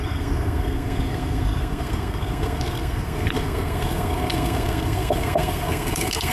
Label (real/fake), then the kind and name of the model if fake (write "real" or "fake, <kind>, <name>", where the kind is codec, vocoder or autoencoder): fake, codec, SNAC